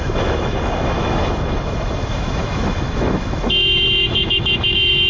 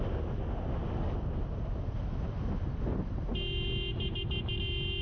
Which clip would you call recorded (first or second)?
second